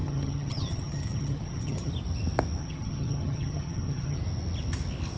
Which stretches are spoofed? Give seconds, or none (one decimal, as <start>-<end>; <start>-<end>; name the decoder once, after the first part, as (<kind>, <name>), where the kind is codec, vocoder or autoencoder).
0.0-1.9 (vocoder, HiFi-GAN); 2.6-4.2